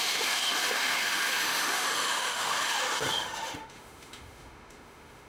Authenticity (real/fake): fake